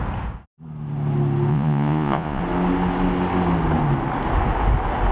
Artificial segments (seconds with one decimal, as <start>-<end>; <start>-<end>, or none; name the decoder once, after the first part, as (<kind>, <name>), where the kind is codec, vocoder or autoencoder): 1.5-2.4 (vocoder, Vocos)